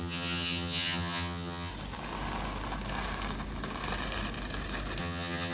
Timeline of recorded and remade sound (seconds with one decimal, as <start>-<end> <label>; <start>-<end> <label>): 0.0-1.7 remade; 1.7-5.0 recorded; 5.0-5.5 remade